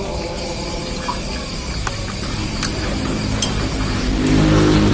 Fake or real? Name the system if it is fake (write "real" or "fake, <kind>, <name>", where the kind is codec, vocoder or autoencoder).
real